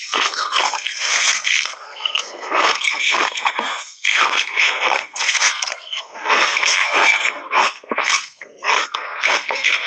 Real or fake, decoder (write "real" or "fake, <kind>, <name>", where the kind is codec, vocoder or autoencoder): fake, codec, SNAC